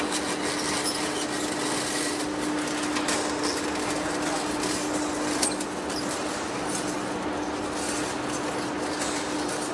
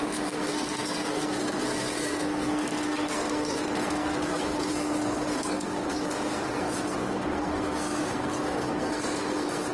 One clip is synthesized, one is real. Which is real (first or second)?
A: first